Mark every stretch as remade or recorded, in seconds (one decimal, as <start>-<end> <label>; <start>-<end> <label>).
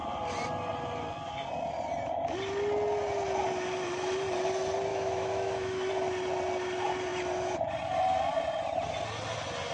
0.0-4.9 recorded; 4.9-5.9 remade; 5.9-9.7 recorded